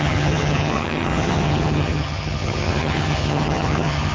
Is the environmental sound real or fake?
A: fake